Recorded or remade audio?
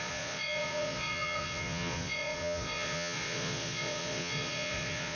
remade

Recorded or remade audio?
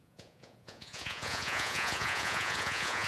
remade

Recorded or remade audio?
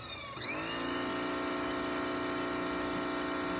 recorded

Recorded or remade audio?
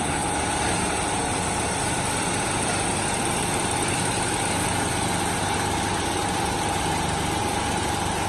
recorded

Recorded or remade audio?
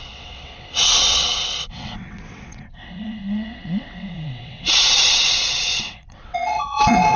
remade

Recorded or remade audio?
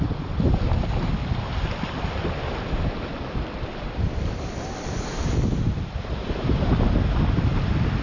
recorded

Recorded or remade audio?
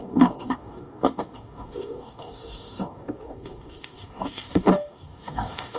remade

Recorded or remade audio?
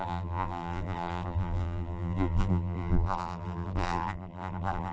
remade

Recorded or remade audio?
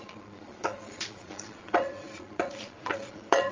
remade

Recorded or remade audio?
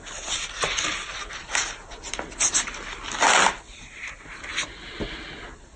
recorded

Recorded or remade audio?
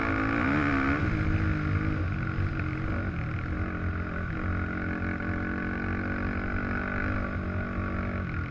recorded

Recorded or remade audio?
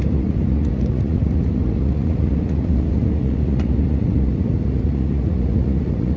remade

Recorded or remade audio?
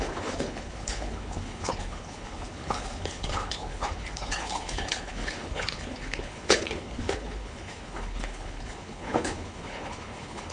remade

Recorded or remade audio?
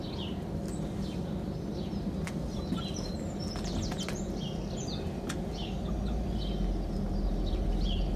recorded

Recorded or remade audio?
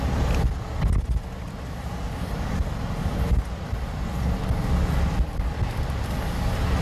recorded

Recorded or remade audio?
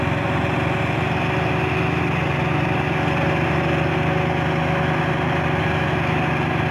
recorded